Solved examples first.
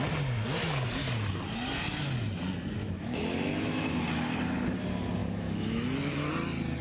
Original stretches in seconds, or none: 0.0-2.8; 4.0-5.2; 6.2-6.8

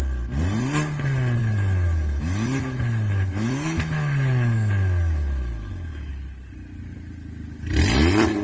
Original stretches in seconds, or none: 0.0-1.4; 6.1-8.4

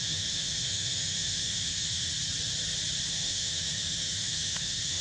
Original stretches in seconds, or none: 2.1-3.1

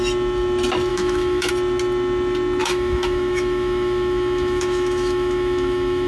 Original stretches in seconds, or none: 0.0-0.9; 1.5-2.6

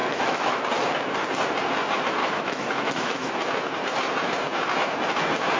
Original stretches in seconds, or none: 0.6-2.2; 3.3-5.6

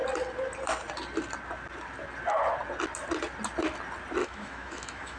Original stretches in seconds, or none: 0.0-4.2